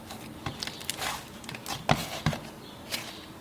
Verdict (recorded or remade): recorded